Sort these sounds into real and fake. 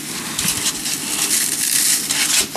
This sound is real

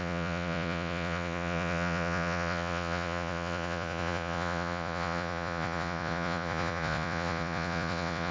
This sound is fake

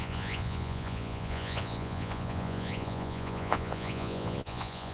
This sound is fake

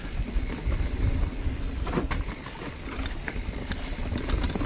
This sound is real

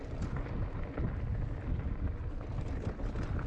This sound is real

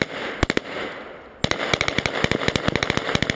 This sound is real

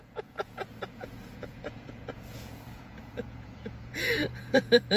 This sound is fake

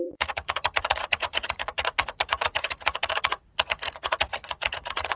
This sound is fake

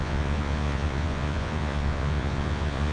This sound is fake